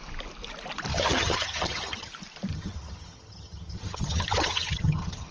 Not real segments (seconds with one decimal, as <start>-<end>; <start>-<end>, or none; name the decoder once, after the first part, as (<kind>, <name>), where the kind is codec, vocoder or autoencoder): 0.9-2.1 (vocoder, HiFi-GAN); 2.5-5.3